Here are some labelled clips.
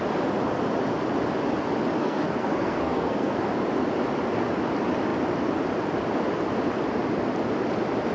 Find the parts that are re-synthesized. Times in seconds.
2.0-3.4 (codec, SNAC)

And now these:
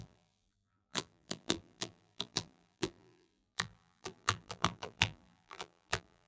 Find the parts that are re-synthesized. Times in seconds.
0.0-6.3 (vocoder, BigVGAN v2)

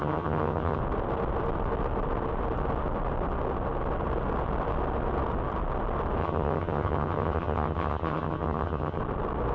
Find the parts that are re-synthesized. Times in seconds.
0.0-0.8 (vocoder, HiFi-GAN); 6.2-9.0